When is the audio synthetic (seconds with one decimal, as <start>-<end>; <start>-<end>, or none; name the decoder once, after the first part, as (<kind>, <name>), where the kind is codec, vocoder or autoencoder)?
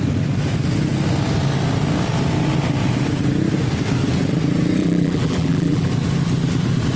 4.8-5.9 (vocoder, BigVGAN v2)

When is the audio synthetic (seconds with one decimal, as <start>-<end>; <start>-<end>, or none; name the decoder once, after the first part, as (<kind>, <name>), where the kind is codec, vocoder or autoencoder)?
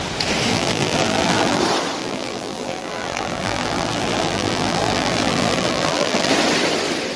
0.5-1.6 (vocoder, BigVGAN v2); 2.0-6.3